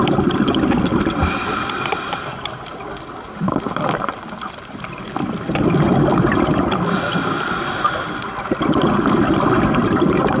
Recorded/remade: recorded